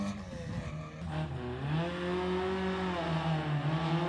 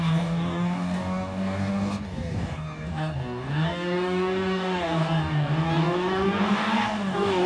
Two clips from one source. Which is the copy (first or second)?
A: second